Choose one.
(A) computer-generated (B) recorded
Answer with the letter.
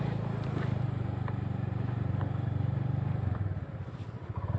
A